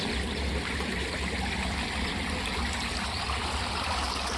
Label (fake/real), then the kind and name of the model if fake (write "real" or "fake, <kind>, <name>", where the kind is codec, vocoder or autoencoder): real